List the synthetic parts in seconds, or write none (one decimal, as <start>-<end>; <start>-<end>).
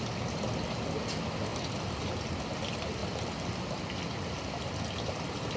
none